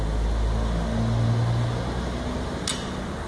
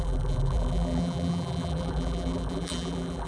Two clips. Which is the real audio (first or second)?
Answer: first